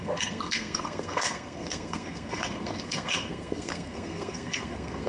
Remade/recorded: remade